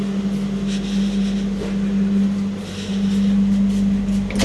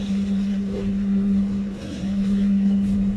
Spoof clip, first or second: second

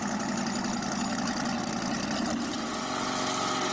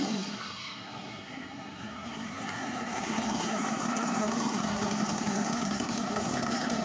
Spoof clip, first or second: second